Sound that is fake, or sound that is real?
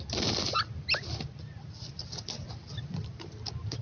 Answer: real